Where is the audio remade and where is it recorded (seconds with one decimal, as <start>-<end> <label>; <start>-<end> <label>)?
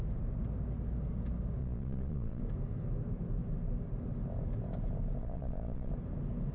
0.0-1.6 recorded; 1.6-2.4 remade; 2.4-5.2 recorded; 5.2-5.9 remade; 5.9-6.5 recorded